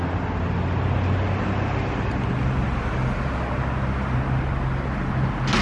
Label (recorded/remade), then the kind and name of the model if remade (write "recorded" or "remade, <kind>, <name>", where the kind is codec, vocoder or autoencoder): recorded